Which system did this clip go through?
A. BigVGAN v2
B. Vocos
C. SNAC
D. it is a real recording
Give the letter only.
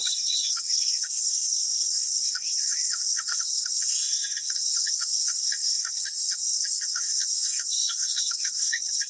C